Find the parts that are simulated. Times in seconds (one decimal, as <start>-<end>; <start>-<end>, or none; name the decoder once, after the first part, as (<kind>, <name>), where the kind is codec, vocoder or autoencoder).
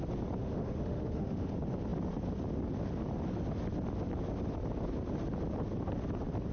0.4-1.5 (autoencoder, DAC-VAE)